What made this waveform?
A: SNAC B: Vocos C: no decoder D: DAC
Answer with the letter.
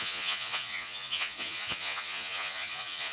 B